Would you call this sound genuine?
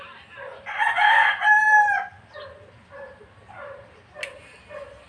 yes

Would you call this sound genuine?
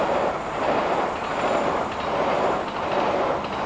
yes